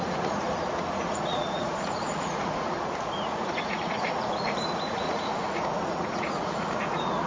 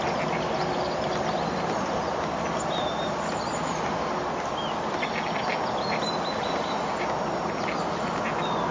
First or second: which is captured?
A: second